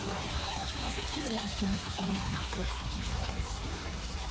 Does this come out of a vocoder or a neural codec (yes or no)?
yes